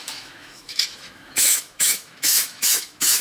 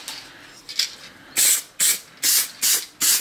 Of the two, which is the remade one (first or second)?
first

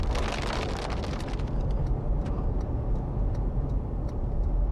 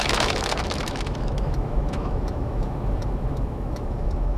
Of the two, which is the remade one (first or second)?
second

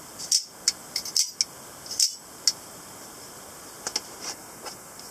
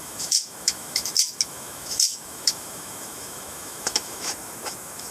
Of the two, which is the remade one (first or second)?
second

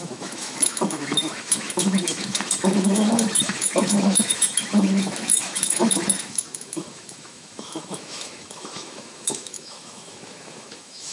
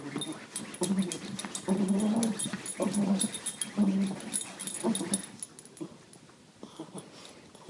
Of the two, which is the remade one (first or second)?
first